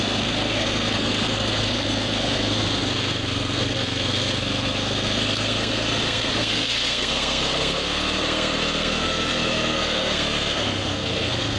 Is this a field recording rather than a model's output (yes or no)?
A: no